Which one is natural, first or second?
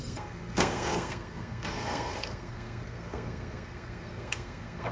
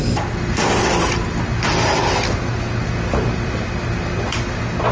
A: second